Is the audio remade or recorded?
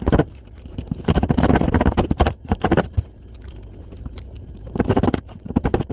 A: remade